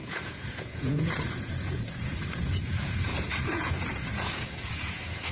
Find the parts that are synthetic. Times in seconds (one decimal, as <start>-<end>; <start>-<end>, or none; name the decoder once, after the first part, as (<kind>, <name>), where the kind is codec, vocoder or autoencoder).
0.0-5.3 (vocoder, Vocos)